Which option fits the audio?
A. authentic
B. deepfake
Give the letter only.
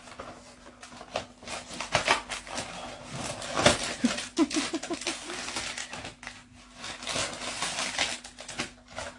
A